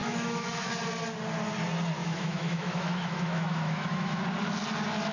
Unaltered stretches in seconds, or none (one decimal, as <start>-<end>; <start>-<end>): 0.7-2.0; 4.2-5.1